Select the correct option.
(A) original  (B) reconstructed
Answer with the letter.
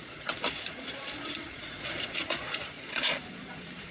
B